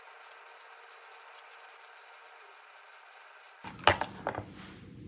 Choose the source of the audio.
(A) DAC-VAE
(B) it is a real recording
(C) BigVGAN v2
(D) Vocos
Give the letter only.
B